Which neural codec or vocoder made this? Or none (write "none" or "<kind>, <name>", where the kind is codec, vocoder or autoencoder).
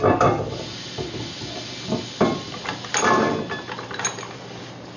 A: none